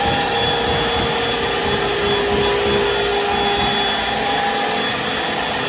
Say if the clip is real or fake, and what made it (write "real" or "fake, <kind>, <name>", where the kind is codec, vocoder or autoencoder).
real